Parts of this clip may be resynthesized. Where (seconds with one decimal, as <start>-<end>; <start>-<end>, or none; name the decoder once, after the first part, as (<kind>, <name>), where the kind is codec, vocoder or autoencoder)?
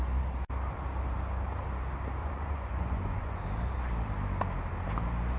2.2-3.4 (vocoder, Vocos)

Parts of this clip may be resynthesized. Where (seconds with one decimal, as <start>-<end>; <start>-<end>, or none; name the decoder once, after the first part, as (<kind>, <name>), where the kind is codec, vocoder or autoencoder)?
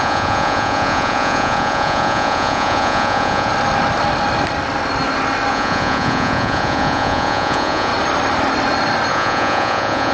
0.0-3.5 (vocoder, Vocos); 5.5-7.9; 9.1-10.1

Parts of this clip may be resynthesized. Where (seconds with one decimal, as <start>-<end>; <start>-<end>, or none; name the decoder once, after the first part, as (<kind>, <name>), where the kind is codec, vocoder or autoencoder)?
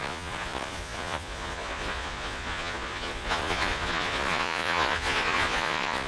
0.0-6.1 (vocoder, Vocos)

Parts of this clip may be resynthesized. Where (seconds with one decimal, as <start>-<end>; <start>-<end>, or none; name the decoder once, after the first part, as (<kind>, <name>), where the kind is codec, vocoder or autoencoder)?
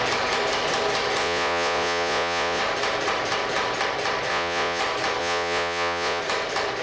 1.2-2.6 (vocoder, Vocos); 4.3-4.8; 5.2-6.2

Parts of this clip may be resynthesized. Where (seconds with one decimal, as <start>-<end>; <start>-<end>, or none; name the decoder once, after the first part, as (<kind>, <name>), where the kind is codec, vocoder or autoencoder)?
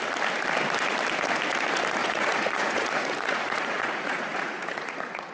2.0-5.3 (vocoder, Vocos)